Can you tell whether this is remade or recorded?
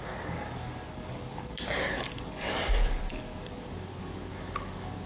remade